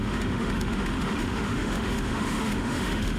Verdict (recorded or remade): remade